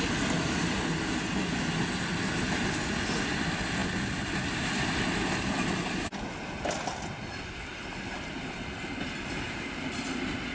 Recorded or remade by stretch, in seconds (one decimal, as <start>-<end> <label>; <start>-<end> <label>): 0.0-10.5 recorded